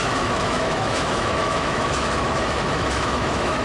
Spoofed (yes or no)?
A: yes